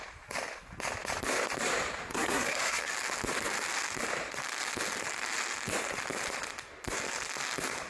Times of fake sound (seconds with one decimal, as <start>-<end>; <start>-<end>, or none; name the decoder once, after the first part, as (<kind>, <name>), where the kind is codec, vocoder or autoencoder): 2.1-2.9 (codec, SNAC)